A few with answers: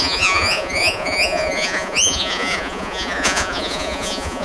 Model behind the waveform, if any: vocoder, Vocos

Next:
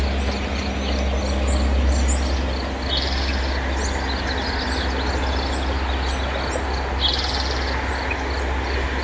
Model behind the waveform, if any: none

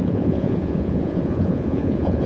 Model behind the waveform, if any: vocoder, Vocos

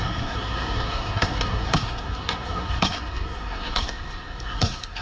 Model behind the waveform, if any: codec, SNAC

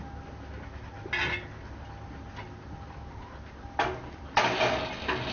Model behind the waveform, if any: none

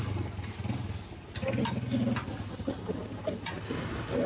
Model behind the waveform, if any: none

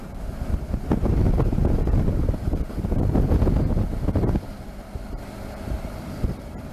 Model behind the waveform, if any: none